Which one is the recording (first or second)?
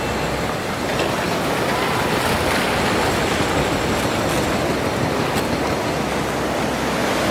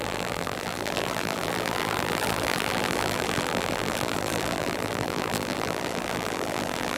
first